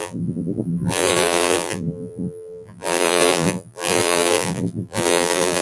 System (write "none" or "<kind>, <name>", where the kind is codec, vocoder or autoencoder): vocoder, BigVGAN v2